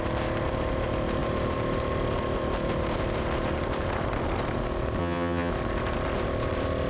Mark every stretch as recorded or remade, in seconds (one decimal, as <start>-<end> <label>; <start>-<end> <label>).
0.0-5.0 recorded; 5.0-5.5 remade; 5.5-6.9 recorded